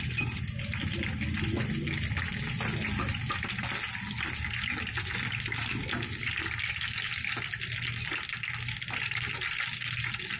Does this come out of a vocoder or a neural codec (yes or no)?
no